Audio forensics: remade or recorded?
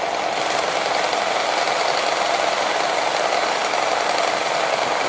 recorded